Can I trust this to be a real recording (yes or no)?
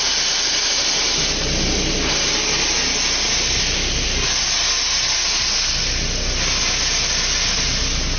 yes